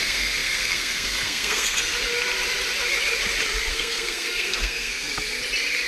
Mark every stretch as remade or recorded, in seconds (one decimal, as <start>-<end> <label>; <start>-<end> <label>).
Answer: 0.0-1.9 remade; 1.9-3.7 recorded; 3.7-5.1 remade; 5.1-5.9 recorded